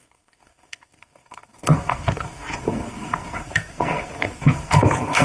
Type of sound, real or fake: fake